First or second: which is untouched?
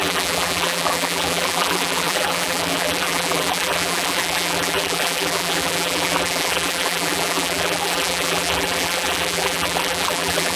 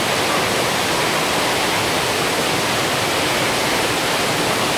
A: second